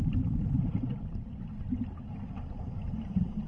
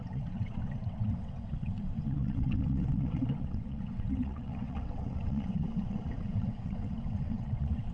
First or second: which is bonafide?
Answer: first